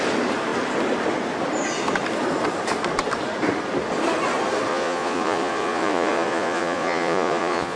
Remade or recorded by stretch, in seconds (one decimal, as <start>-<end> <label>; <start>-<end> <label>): 0.0-4.7 recorded; 4.7-7.8 remade

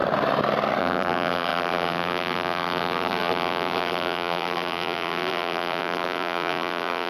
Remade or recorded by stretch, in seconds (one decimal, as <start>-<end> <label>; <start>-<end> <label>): 0.0-0.8 recorded; 0.8-7.1 remade

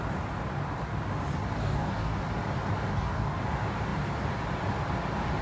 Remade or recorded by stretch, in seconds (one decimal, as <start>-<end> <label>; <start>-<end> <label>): 0.0-1.6 recorded; 1.6-2.2 remade; 2.2-2.9 recorded; 2.9-3.4 remade; 3.4-5.4 recorded

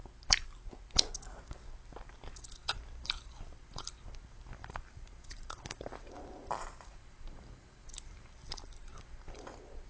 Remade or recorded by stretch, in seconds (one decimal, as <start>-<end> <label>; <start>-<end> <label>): 0.0-1.9 recorded; 1.9-9.9 remade